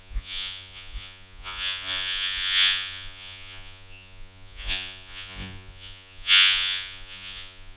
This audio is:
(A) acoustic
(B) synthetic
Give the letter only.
B